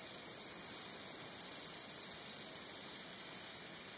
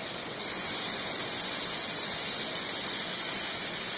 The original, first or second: first